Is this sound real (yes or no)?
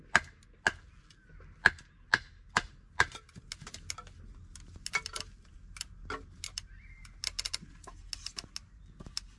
yes